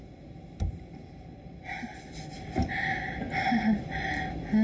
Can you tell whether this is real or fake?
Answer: real